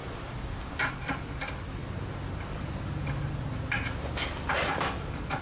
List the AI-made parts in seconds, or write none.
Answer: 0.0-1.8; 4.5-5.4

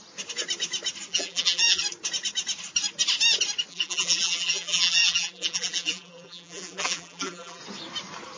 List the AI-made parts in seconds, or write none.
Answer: 1.1-1.8; 3.7-7.6

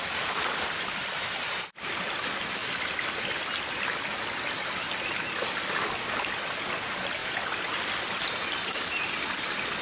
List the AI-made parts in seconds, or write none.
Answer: 7.2-7.8